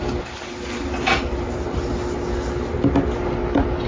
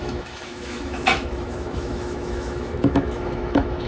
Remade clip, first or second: second